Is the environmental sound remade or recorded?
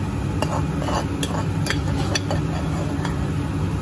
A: recorded